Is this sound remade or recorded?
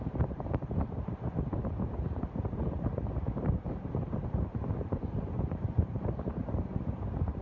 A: remade